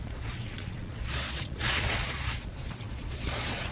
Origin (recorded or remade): remade